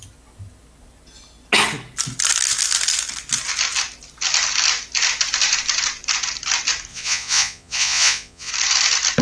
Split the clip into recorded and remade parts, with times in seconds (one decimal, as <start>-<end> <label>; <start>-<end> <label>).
0.0-6.9 recorded; 6.9-8.5 remade; 8.5-9.2 recorded